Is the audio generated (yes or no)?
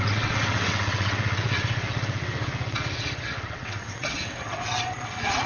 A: yes